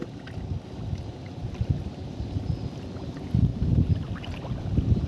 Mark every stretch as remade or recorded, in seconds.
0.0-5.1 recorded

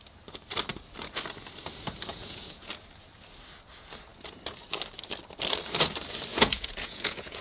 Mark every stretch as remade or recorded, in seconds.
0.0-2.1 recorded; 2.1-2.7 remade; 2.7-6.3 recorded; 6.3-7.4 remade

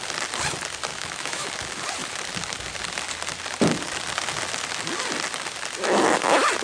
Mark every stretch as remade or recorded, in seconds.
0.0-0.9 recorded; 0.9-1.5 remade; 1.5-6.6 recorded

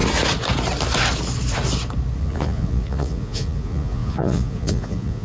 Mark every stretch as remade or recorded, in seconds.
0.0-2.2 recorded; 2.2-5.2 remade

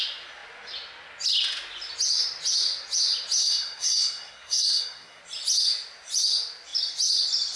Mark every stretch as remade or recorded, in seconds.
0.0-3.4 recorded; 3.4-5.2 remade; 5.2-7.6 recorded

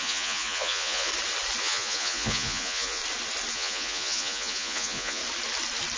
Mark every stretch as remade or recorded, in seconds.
0.0-1.1 remade; 1.1-1.6 recorded; 1.6-3.0 remade; 3.0-3.5 recorded; 3.5-5.2 remade; 5.2-6.0 recorded

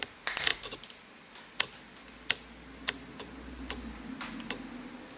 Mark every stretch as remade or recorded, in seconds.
0.0-5.2 recorded